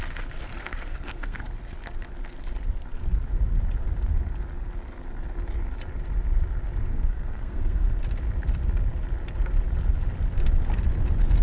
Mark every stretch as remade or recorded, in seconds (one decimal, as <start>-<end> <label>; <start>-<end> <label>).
0.0-0.6 recorded; 0.6-1.5 remade; 1.5-6.9 recorded; 6.9-8.0 remade; 8.0-11.4 recorded